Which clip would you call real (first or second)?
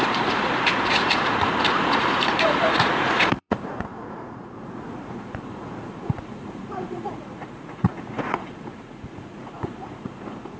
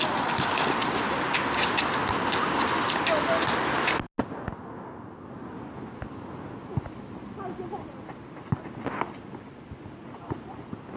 second